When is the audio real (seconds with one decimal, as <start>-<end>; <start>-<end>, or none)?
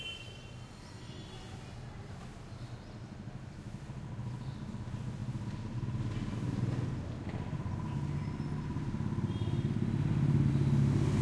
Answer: 0.0-11.2